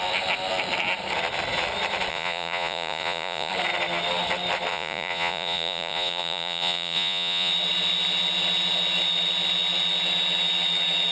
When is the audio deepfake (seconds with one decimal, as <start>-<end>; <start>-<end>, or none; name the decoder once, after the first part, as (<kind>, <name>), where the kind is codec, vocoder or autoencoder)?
2.1-3.5 (vocoder, Vocos); 4.7-7.5